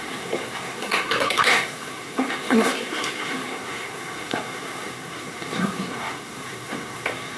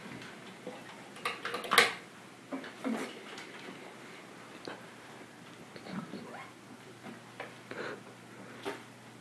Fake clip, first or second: first